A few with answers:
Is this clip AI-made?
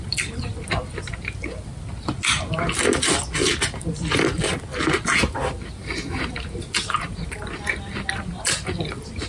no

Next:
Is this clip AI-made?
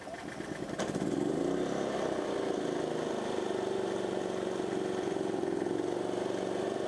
no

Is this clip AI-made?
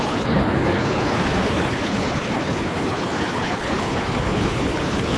yes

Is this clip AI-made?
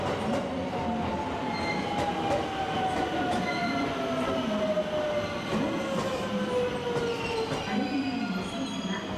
no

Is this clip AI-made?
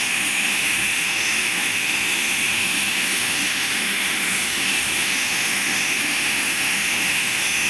yes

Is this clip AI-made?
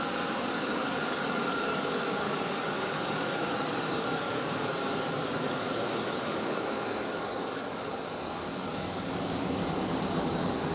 yes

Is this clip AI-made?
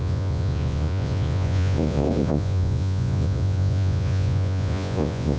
yes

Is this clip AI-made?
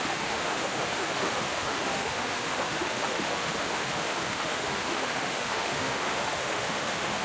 yes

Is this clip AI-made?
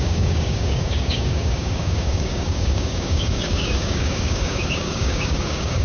yes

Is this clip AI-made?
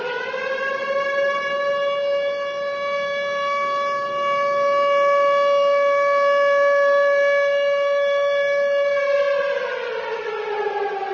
no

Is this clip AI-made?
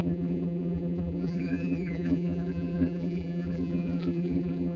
yes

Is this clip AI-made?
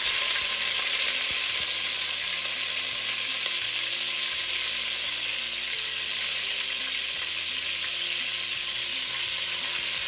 no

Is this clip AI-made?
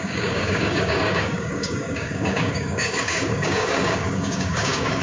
yes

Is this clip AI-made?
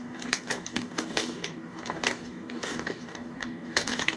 yes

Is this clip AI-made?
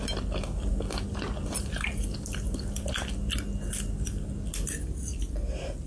no